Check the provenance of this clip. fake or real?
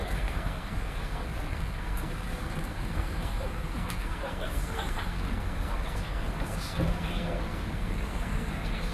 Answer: fake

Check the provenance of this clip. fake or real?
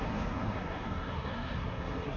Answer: fake